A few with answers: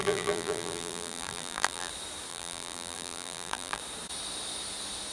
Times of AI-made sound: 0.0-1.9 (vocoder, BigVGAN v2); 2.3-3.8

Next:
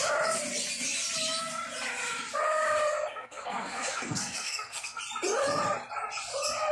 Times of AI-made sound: 3.1-5.0 (codec, SNAC)

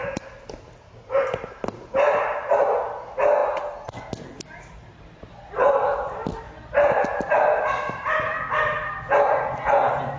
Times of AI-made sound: none

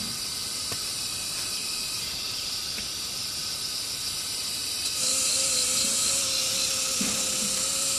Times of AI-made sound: 0.4-3.7 (vocoder, BigVGAN v2)